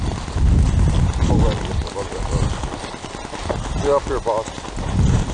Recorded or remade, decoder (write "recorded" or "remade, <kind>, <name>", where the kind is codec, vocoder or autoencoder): recorded